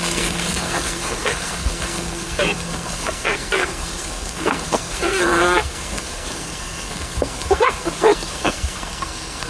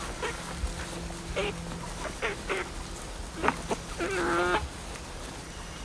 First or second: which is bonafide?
second